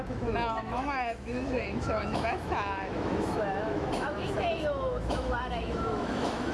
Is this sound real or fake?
fake